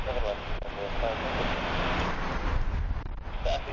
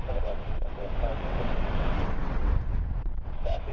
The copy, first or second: second